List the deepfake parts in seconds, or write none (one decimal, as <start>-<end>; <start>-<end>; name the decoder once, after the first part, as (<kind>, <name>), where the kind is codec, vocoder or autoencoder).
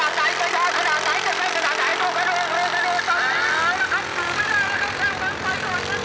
none